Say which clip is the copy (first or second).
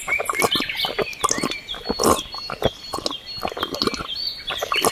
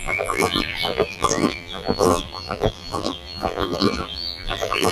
second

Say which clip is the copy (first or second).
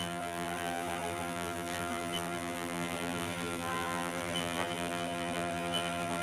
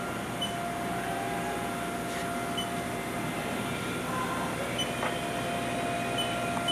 first